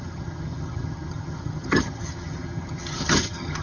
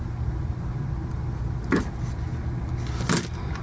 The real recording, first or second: second